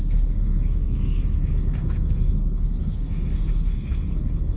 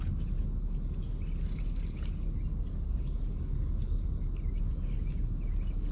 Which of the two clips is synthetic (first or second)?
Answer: first